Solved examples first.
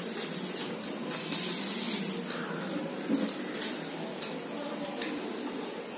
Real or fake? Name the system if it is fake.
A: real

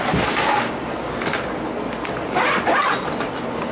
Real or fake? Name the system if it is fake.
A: real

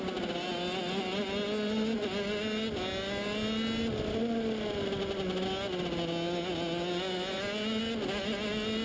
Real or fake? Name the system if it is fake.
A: real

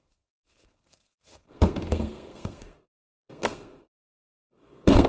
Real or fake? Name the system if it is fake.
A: fake, codec, SNAC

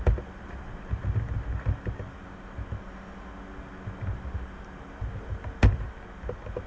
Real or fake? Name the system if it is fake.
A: real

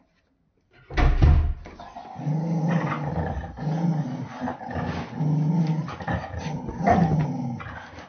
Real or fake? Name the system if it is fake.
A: real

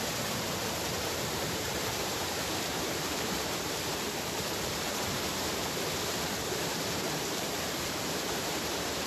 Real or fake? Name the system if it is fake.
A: fake, vocoder, BigVGAN v2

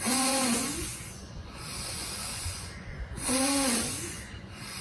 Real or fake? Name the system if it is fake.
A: fake, vocoder, Vocos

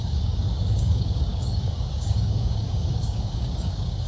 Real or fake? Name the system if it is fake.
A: fake, codec, DAC